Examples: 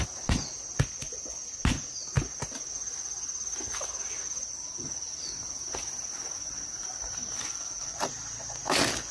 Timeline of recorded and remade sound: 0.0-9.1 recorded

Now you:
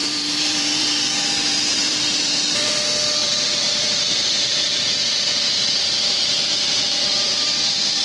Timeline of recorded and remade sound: 0.0-2.7 remade; 2.7-3.2 recorded; 3.2-8.0 remade

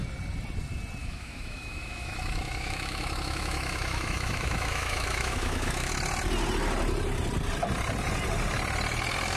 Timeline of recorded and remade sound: 0.0-1.0 recorded; 1.0-5.9 remade; 5.9-9.4 recorded